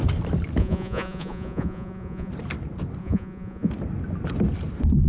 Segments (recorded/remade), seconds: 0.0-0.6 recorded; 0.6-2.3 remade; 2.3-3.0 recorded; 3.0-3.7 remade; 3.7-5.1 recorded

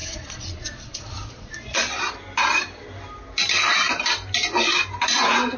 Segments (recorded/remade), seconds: 0.0-2.0 remade; 2.0-5.6 recorded